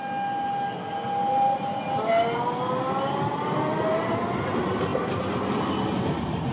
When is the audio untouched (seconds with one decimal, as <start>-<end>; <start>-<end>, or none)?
0.0-6.5